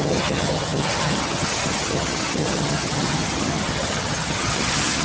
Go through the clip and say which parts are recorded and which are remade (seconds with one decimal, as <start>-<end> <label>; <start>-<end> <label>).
0.0-5.0 remade